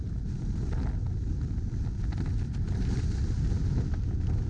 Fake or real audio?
real